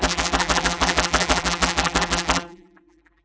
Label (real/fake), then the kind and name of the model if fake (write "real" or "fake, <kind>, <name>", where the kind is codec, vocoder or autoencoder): fake, vocoder, BigVGAN v2